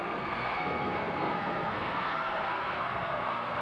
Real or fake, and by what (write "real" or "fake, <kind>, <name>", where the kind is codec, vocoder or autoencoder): fake, codec, SNAC